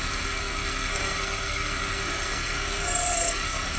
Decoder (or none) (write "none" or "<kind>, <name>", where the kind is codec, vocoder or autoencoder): codec, SNAC